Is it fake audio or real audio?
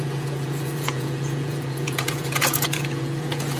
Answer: fake